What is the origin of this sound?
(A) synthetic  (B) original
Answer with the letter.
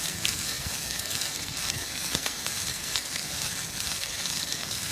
A